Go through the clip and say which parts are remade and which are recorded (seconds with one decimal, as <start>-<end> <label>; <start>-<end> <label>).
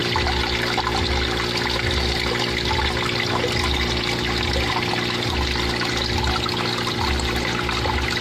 0.0-8.2 recorded